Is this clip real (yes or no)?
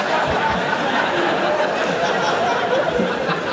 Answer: yes